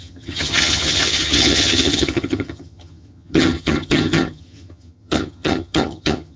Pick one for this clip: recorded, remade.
remade